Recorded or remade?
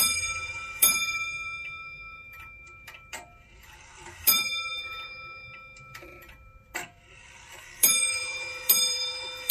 remade